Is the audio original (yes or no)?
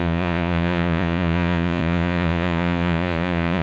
no